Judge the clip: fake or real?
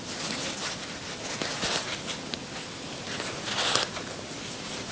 real